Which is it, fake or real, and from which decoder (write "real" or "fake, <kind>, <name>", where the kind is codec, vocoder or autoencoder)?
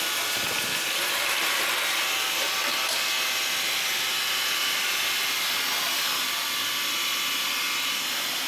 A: real